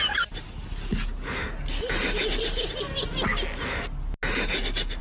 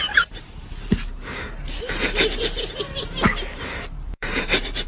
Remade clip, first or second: second